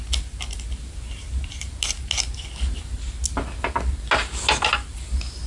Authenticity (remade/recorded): recorded